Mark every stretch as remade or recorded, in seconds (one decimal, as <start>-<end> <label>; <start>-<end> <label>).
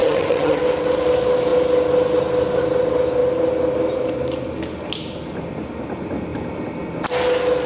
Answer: 0.0-0.6 remade; 0.6-7.7 recorded